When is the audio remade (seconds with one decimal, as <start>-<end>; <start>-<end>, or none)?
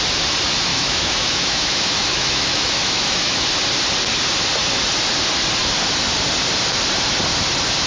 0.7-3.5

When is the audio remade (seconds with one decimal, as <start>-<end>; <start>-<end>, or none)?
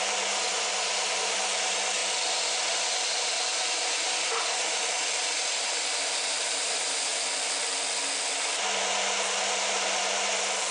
0.0-2.0; 2.7-7.1; 8.8-10.7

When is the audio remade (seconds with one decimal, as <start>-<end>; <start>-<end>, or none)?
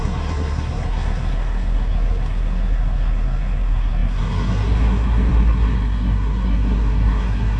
0.0-7.6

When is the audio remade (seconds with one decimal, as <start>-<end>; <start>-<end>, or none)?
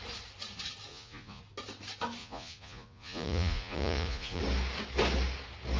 0.9-1.4; 2.2-4.4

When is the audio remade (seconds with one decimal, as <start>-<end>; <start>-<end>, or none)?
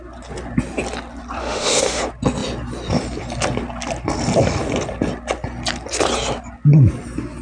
1.4-2.0